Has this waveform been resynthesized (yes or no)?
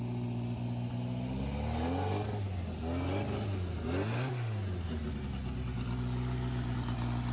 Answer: no